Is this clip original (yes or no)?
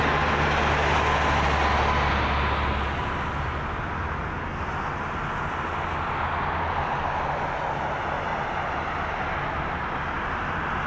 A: yes